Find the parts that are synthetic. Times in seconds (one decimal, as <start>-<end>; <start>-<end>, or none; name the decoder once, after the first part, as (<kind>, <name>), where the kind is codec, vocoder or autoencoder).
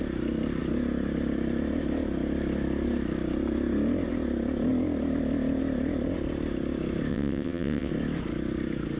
7.1-7.9 (vocoder, WaveNeXt)